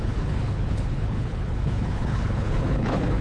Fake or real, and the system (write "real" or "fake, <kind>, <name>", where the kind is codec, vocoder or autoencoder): fake, codec, HILCodec